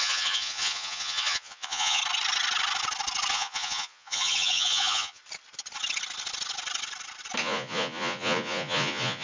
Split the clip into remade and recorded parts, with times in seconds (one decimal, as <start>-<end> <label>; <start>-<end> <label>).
0.0-2.0 remade; 2.0-3.3 recorded; 3.3-5.2 remade; 5.2-7.4 recorded; 7.4-9.2 remade